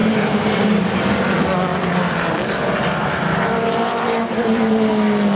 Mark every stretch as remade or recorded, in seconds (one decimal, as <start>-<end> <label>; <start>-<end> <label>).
0.0-0.8 remade; 0.8-1.7 recorded; 1.7-4.9 remade; 4.9-5.4 recorded